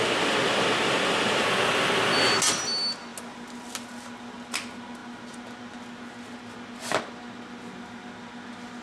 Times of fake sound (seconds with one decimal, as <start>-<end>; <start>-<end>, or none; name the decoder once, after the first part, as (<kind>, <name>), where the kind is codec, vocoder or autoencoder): none